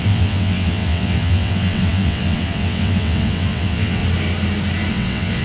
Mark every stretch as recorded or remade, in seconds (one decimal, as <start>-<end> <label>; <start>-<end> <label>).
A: 0.0-4.0 remade; 4.0-4.9 recorded; 4.9-5.4 remade

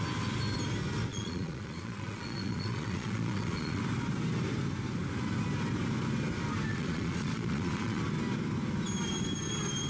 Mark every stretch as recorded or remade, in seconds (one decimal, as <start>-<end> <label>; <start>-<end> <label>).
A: 0.0-1.1 recorded; 1.1-3.8 remade; 3.8-6.7 recorded; 6.7-8.0 remade; 8.0-9.9 recorded